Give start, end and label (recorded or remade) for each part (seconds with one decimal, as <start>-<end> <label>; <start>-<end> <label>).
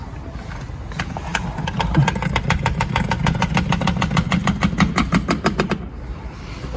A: 0.0-6.8 recorded